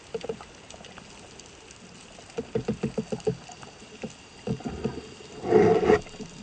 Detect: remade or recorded recorded